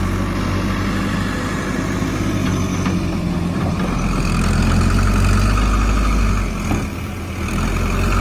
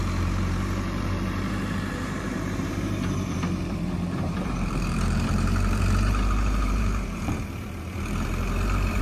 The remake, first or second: second